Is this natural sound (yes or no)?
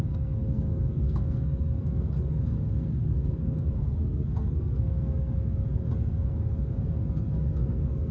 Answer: no